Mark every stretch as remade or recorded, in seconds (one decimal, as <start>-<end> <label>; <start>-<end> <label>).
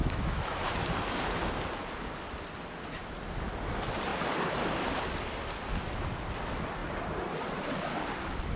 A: 0.0-0.6 remade; 0.6-8.6 recorded